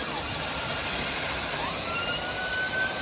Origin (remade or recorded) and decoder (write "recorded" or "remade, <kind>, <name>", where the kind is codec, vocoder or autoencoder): recorded